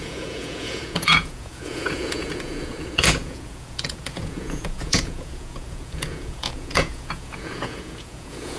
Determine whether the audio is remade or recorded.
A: remade